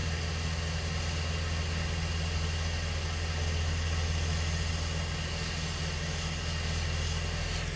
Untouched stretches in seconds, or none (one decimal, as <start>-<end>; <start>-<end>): 0.0-7.8